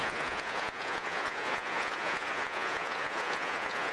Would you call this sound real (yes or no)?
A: no